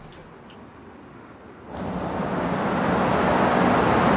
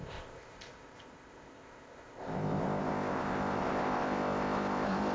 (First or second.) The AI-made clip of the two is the second